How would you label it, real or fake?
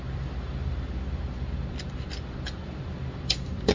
fake